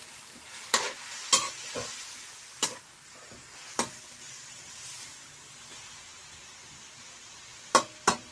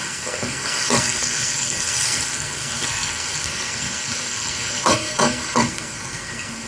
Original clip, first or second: first